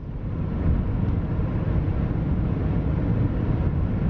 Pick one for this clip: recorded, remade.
recorded